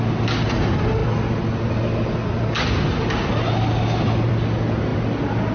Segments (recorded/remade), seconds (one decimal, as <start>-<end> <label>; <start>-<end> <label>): 0.0-5.5 recorded